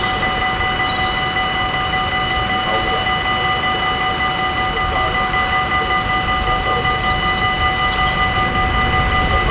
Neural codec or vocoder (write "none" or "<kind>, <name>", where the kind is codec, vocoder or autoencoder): none